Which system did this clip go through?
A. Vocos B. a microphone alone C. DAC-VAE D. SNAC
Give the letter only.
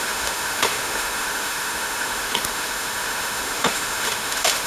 C